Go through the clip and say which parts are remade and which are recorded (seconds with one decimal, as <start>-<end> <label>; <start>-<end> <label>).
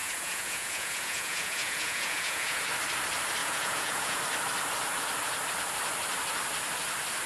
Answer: 0.0-2.6 remade; 2.6-3.4 recorded; 3.4-4.2 remade; 4.2-7.3 recorded